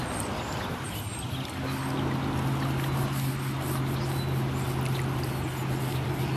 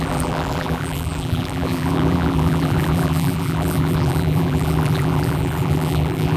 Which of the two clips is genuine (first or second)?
first